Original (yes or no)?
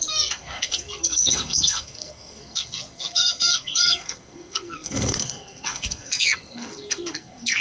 no